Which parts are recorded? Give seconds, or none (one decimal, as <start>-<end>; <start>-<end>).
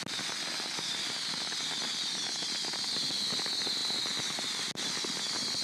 0.0-5.6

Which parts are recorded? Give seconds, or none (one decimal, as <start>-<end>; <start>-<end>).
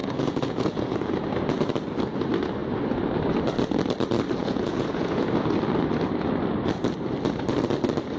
1.1-4.4; 5.3-8.2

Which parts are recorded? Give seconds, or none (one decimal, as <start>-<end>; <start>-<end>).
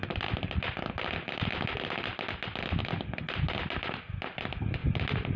0.0-5.4